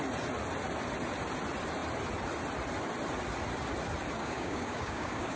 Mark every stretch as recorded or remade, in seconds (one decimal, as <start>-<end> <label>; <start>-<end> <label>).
0.0-4.2 recorded; 4.2-5.4 remade